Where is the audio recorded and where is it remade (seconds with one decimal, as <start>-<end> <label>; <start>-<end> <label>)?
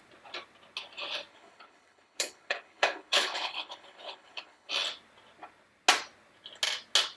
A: 0.0-1.3 recorded; 1.3-4.7 remade; 4.7-7.2 recorded